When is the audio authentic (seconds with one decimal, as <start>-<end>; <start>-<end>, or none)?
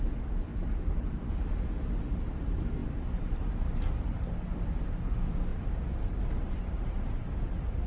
0.0-5.5